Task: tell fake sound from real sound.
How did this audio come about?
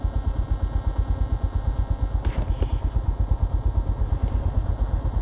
real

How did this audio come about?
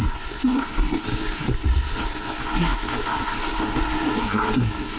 fake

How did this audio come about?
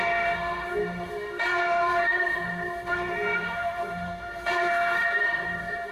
fake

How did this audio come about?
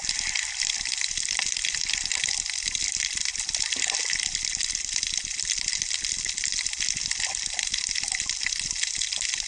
real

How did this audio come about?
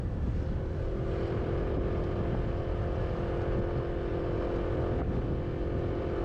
real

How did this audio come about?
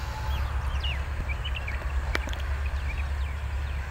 real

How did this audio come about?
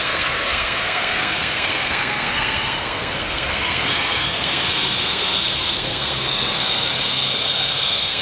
fake